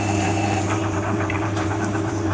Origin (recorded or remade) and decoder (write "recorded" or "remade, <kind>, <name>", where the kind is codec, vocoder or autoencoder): remade, vocoder, BigVGAN v2